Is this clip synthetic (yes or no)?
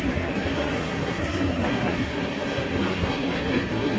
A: yes